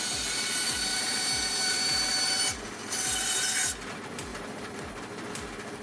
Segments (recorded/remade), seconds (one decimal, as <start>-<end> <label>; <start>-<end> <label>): 0.0-0.9 recorded; 0.9-3.9 remade; 3.9-4.3 recorded; 4.3-4.9 remade; 4.9-5.8 recorded